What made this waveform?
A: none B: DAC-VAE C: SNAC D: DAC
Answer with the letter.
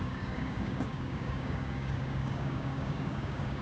D